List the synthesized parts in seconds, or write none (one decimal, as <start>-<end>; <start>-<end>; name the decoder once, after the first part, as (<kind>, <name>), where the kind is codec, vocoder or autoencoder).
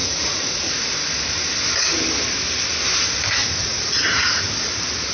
0.0-0.7 (vocoder, Vocos); 3.4-4.5